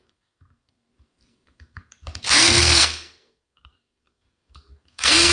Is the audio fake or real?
fake